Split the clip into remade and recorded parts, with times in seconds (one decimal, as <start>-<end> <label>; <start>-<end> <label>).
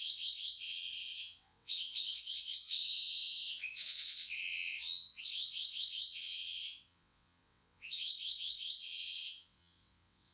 0.0-10.3 remade